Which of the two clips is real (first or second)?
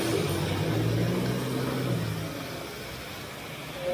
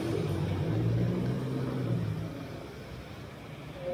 first